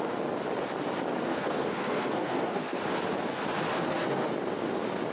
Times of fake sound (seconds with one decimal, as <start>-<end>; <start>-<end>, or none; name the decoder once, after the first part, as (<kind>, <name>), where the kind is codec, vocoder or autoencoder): 1.3-2.8 (codec, SNAC); 3.7-4.3

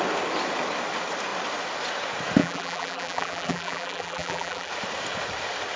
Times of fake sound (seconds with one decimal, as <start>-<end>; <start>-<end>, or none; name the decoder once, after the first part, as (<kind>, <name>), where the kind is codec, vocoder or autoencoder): 2.4-4.7 (vocoder, BigVGAN v2)